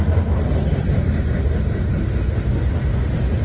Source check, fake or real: real